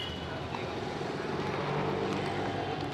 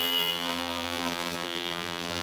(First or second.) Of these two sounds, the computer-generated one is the second